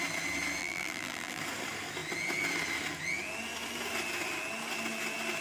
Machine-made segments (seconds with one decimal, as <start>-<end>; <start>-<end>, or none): 0.6-1.4